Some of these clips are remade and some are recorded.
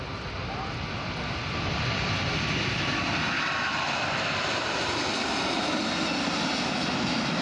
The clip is recorded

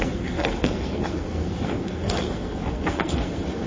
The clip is remade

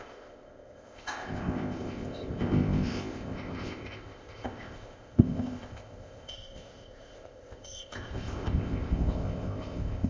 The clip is remade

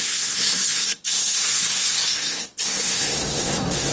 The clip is remade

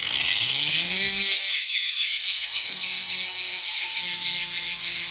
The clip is remade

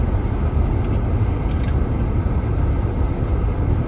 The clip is recorded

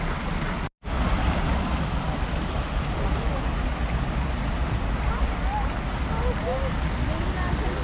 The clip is recorded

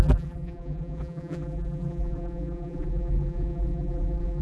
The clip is remade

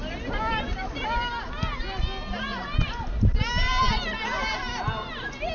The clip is recorded